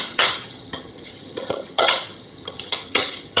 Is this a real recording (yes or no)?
no